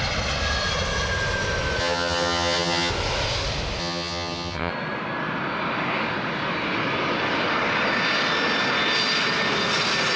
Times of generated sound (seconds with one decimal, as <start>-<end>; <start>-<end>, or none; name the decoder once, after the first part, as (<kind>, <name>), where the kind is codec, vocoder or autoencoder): 1.8-2.9 (vocoder, HiFi-GAN); 3.8-4.7

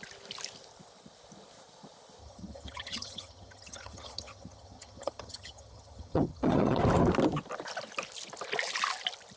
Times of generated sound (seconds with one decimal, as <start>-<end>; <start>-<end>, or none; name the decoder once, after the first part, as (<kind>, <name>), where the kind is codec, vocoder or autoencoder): 2.2-6.8 (vocoder, HiFi-GAN)

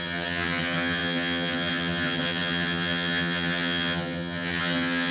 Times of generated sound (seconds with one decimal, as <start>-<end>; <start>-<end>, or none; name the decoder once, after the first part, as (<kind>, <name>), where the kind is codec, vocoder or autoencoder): 0.0-5.1 (vocoder, HiFi-GAN)

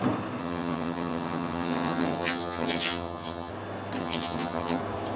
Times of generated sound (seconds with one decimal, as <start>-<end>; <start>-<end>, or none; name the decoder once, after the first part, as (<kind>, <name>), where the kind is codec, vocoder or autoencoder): 0.4-3.5 (vocoder, HiFi-GAN); 4.0-4.8